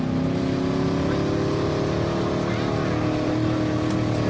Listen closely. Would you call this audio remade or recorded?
recorded